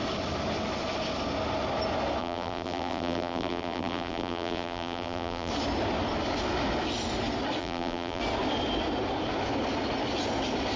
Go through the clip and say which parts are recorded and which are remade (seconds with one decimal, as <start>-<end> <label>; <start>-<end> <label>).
0.0-2.2 recorded; 2.2-5.5 remade; 5.5-7.6 recorded; 7.6-8.2 remade; 8.2-10.8 recorded